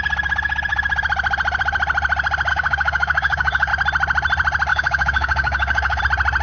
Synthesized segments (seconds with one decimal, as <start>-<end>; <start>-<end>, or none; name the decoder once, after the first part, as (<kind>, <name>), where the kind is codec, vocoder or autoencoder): 2.5-3.7 (codec, DAC); 4.7-6.0